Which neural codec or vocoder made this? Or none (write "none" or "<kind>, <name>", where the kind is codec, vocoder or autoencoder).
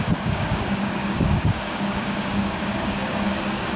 codec, DAC